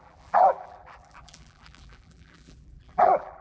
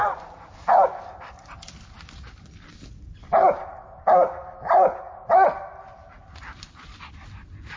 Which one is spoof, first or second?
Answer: first